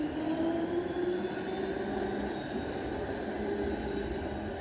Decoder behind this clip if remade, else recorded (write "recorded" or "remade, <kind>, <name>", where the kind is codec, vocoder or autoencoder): recorded